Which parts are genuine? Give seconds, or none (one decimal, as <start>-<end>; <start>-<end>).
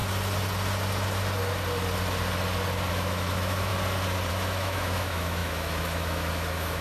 0.0-2.9; 3.7-4.3